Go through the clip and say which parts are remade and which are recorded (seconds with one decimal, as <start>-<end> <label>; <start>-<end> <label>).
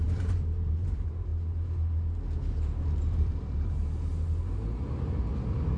0.0-1.3 remade; 1.3-2.5 recorded; 2.5-4.1 remade; 4.1-5.8 recorded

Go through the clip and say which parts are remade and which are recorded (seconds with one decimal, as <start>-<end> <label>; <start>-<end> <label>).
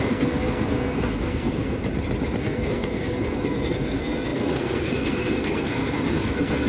0.0-1.8 remade; 1.8-2.4 recorded; 2.4-6.7 remade